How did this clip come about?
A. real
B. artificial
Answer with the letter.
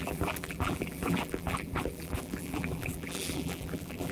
B